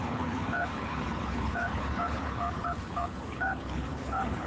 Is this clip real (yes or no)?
no